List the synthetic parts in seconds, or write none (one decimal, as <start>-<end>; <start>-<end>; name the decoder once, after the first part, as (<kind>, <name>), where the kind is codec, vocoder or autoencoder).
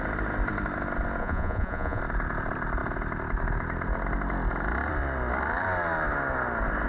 1.2-2.0 (vocoder, Vocos)